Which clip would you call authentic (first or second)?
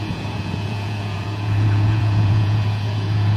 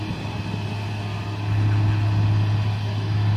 second